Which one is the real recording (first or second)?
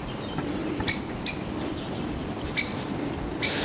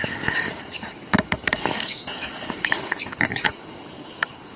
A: first